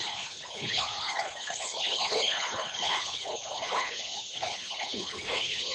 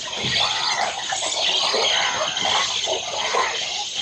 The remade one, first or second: first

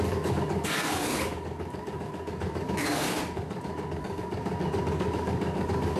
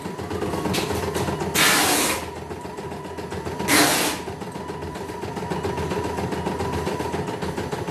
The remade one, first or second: first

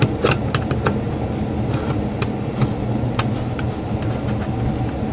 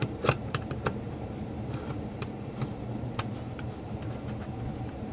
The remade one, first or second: second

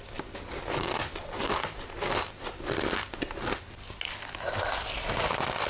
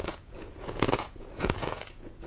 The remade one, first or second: second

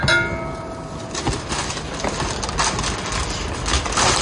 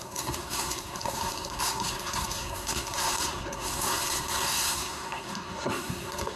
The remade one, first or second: second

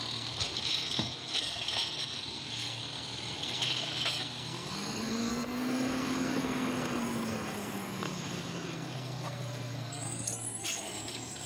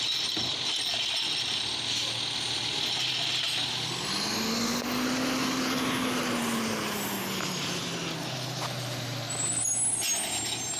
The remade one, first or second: first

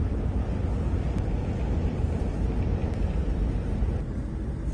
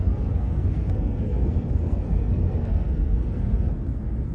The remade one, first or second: second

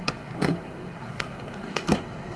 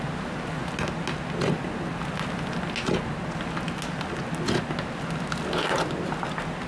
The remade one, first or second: first